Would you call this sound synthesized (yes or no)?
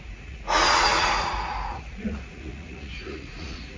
yes